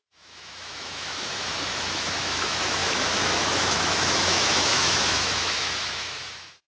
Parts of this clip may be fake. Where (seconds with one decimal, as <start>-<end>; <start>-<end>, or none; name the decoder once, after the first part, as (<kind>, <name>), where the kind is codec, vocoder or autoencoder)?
0.0-6.8 (autoencoder, DAC-VAE)